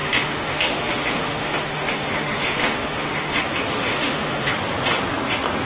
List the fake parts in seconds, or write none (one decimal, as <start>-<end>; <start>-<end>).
0.0-3.4; 3.9-4.5